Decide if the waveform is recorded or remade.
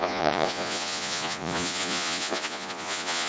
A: remade